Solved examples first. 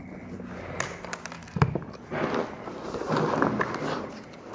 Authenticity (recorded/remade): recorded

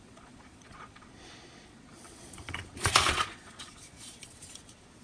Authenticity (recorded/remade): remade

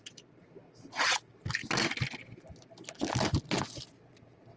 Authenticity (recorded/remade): recorded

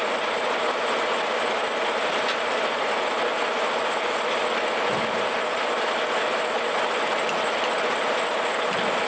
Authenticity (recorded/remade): recorded